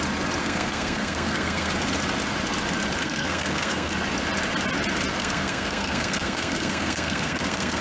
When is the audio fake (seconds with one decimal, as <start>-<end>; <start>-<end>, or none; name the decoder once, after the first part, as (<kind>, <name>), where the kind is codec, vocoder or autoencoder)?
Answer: 0.4-1.7 (codec, SNAC); 3.0-3.9; 5.2-7.8